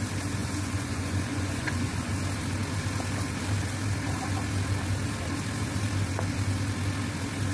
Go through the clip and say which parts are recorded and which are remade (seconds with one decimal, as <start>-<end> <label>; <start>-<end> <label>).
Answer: 0.0-0.4 recorded; 0.4-2.1 remade; 2.1-7.5 recorded